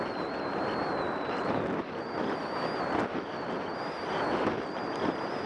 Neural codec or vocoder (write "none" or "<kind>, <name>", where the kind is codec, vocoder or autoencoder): none